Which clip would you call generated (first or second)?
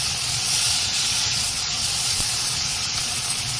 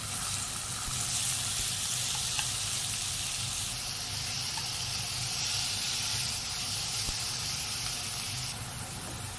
first